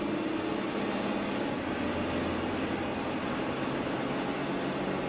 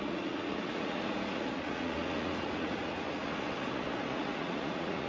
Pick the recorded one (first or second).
first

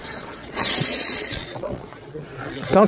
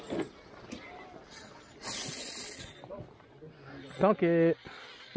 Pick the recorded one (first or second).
second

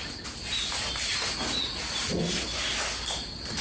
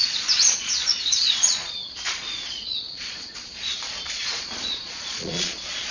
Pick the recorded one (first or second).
first